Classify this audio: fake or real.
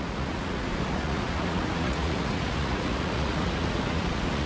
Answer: fake